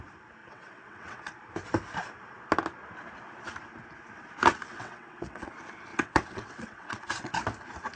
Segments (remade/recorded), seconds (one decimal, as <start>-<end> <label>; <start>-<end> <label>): 0.0-0.4 recorded; 0.4-1.3 remade; 1.3-4.7 recorded; 4.7-5.5 remade; 5.5-5.9 recorded; 5.9-7.3 remade; 7.3-8.0 recorded